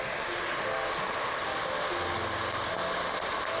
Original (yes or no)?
yes